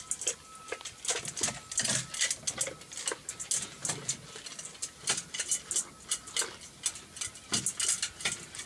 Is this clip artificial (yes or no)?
no